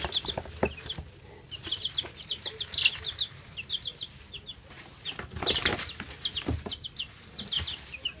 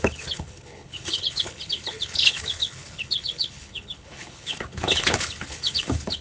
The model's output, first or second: second